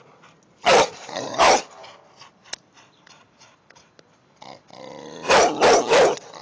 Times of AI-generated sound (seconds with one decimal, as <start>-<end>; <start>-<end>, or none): 0.7-1.5